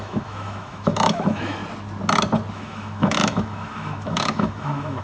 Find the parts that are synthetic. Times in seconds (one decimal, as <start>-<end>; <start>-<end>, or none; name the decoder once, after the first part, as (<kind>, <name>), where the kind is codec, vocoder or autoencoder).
0.0-1.6 (autoencoder, DAC-VAE); 2.5-5.0